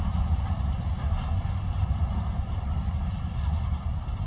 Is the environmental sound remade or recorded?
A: recorded